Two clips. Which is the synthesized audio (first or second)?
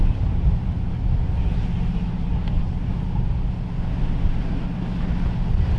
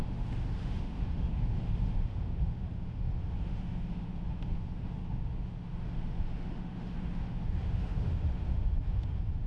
second